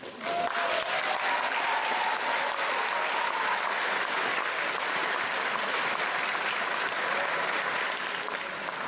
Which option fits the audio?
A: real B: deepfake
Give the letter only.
A